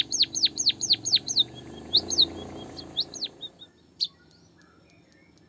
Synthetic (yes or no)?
no